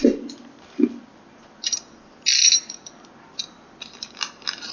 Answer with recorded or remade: recorded